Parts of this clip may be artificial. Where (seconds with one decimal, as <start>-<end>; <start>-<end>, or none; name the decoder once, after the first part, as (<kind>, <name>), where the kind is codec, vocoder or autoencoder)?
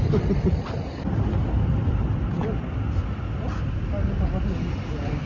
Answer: none